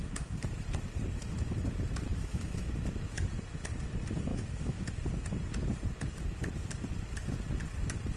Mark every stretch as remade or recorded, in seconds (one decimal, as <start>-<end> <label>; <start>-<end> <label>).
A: 0.0-2.1 recorded; 2.1-2.7 remade; 2.7-4.3 recorded; 4.3-4.9 remade; 4.9-8.2 recorded